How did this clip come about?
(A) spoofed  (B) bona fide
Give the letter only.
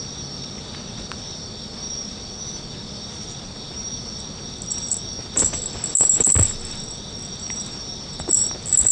B